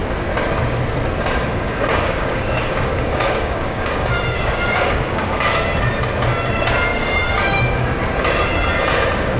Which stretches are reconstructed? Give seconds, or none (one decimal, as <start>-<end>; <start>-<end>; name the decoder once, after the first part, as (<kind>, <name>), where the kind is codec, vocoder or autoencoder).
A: 1.5-5.6 (codec, DAC); 6.9-8.0